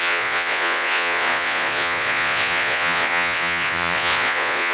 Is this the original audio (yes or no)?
no